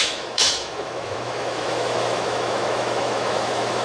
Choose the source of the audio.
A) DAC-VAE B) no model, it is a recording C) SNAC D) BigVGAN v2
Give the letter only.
A